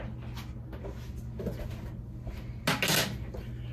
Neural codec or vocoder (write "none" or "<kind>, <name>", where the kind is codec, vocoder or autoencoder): none